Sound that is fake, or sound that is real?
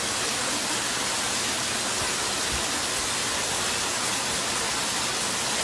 real